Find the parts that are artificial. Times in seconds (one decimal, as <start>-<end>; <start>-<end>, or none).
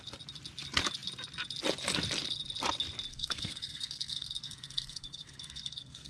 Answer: 3.1-6.1